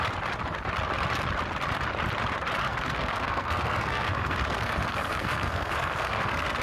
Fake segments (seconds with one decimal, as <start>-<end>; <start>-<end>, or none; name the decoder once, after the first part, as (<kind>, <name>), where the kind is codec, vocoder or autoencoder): 2.6-6.6 (codec, SNAC)